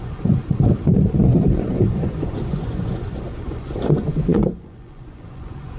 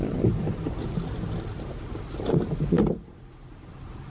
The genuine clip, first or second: second